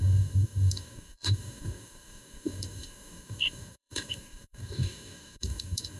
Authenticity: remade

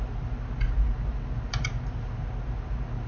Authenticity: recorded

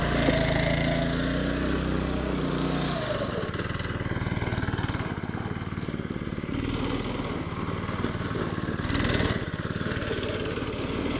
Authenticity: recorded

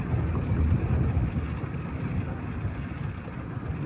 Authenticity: recorded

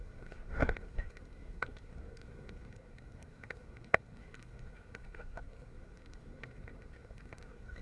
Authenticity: remade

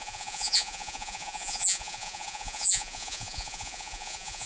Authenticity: remade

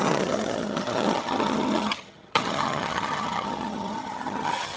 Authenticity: remade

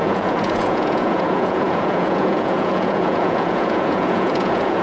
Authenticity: remade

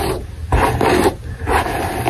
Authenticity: recorded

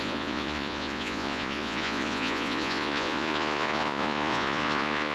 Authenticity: remade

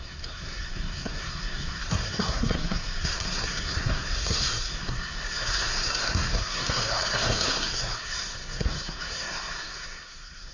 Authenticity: remade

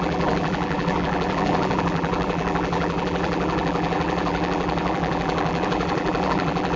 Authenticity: remade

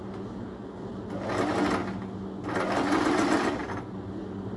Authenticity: recorded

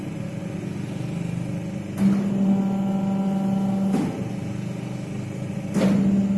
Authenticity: recorded